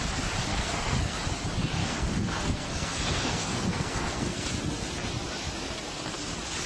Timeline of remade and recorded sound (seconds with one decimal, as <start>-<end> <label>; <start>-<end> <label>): 0.0-0.5 recorded; 0.5-1.2 remade; 1.2-1.8 recorded; 1.8-4.5 remade; 4.5-6.7 recorded